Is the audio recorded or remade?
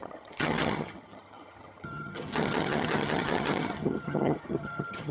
remade